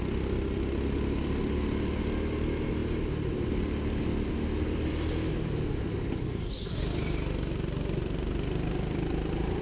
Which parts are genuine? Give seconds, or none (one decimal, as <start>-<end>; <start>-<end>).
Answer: 0.0-9.6